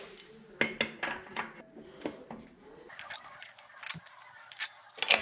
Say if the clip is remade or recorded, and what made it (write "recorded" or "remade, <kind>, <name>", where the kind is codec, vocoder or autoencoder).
recorded